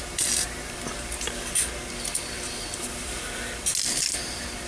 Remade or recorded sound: recorded